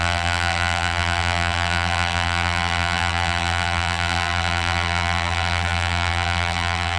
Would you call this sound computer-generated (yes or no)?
yes